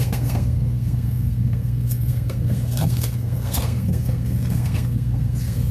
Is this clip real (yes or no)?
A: no